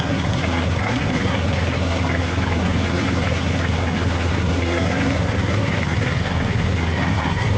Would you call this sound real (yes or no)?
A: no